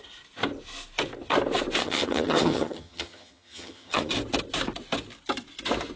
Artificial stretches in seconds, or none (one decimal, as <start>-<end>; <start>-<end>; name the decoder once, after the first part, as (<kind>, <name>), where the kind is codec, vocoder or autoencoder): 1.8-4.1 (vocoder, HiFi-GAN)